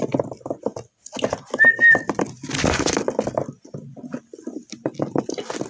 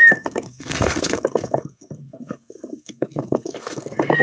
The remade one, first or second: second